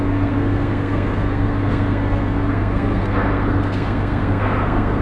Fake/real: fake